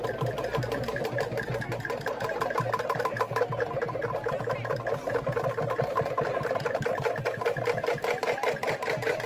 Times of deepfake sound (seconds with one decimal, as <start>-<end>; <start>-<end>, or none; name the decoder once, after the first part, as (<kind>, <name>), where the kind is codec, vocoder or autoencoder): none